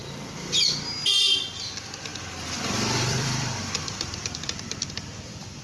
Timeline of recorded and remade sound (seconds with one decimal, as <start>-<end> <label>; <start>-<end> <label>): 0.0-0.7 remade; 0.7-2.1 recorded; 2.1-5.6 remade